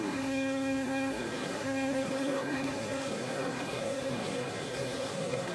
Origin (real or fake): fake